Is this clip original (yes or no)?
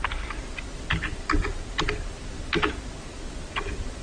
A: yes